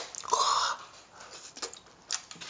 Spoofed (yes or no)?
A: no